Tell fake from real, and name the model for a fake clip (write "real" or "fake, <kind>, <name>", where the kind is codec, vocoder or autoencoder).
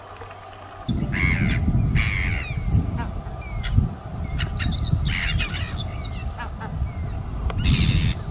real